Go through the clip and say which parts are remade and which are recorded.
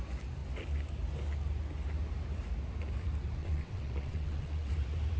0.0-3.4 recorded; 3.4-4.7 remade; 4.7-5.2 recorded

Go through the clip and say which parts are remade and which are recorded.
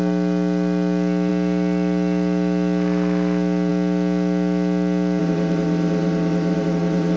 0.0-5.2 recorded; 5.2-7.2 remade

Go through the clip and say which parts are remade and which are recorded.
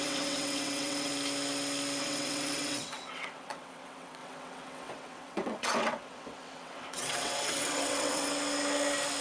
0.0-1.1 remade; 1.1-2.0 recorded; 2.0-8.3 remade; 8.3-9.2 recorded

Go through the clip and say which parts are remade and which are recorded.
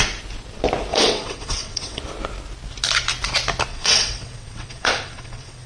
0.0-0.9 recorded; 0.9-2.0 remade; 2.0-3.7 recorded; 3.7-5.7 remade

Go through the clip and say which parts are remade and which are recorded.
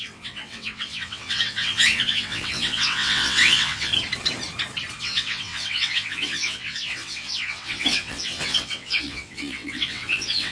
0.0-3.9 remade; 3.9-5.0 recorded; 5.0-10.5 remade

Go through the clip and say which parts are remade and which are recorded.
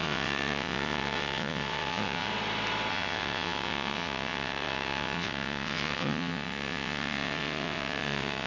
0.0-2.3 remade; 2.3-2.9 recorded; 2.9-8.5 remade